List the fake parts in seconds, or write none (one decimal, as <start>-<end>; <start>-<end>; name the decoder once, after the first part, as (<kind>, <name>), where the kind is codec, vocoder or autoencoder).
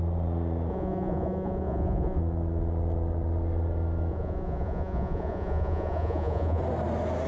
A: 0.7-2.2 (vocoder, Vocos); 4.1-6.6